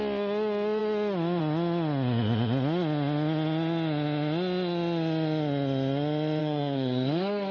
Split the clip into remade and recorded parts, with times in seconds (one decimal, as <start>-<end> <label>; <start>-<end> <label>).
0.0-6.4 recorded; 6.4-7.5 remade

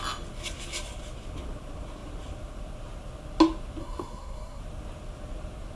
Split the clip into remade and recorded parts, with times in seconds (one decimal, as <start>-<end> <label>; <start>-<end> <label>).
0.0-3.8 recorded; 3.8-4.6 remade; 4.6-5.8 recorded

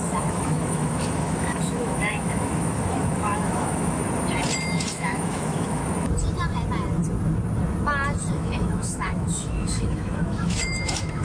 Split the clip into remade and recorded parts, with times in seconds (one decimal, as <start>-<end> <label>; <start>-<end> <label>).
0.0-4.0 remade; 4.0-4.6 recorded; 4.6-5.8 remade; 5.8-8.3 recorded; 8.3-11.2 remade

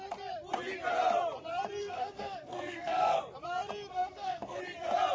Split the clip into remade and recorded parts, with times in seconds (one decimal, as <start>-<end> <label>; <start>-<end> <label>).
0.0-1.8 recorded; 1.8-3.2 remade; 3.2-3.9 recorded; 3.9-4.6 remade; 4.6-5.1 recorded

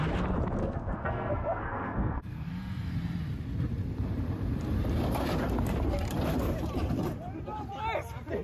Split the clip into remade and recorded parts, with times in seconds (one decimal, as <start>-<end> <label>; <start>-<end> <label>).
0.0-0.6 recorded; 0.6-2.5 remade; 2.5-8.4 recorded